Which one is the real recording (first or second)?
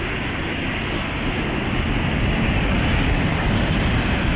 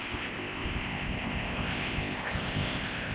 first